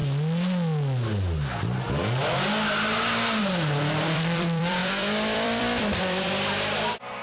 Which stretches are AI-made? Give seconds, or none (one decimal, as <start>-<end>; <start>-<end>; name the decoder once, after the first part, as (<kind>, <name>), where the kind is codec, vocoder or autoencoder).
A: 3.4-7.2 (vocoder, BigVGAN v2)